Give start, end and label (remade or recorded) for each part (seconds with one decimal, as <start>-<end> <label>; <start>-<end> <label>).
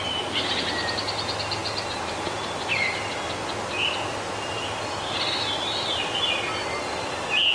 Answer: 0.0-7.5 recorded